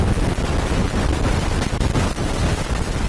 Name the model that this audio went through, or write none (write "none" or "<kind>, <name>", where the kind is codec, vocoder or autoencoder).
none